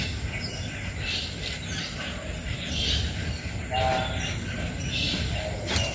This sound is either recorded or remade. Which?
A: recorded